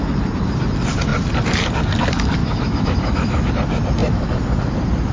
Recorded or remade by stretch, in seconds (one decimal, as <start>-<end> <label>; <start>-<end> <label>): 0.0-2.4 recorded; 2.4-3.5 remade; 3.5-5.1 recorded